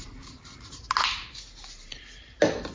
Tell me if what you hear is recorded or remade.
recorded